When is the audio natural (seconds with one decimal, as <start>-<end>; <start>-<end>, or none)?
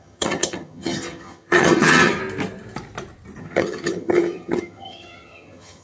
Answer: 2.2-3.4